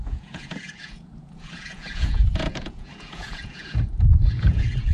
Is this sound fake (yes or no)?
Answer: yes